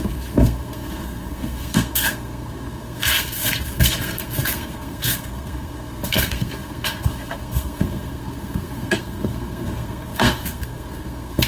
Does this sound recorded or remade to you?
remade